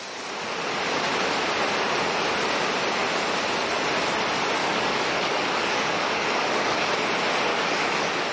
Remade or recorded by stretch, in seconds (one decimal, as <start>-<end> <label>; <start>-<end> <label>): 0.0-4.6 recorded; 4.6-6.9 remade; 6.9-7.5 recorded; 7.5-8.3 remade